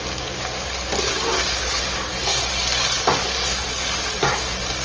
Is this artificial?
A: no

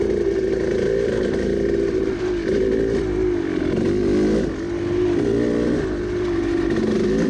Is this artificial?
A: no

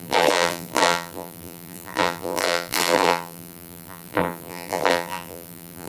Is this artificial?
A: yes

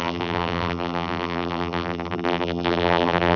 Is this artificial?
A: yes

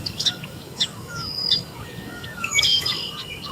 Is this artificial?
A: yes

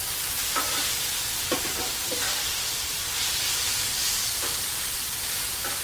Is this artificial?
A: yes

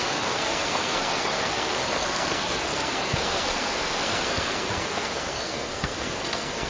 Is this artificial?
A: yes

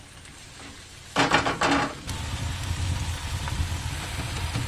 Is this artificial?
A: no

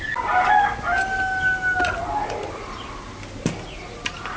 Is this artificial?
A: no